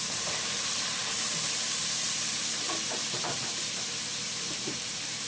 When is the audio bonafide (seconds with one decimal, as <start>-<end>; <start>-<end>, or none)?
none